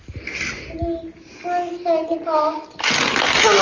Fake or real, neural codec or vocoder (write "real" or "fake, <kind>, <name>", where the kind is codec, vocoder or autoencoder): real